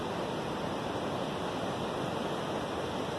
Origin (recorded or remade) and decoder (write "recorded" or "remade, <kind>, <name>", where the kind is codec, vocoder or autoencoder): recorded